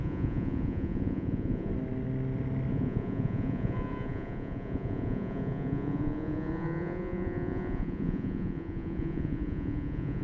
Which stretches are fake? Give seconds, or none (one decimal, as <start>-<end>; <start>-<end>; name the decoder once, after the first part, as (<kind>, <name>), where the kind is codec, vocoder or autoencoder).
0.0-1.7 (vocoder, Vocos); 2.7-10.2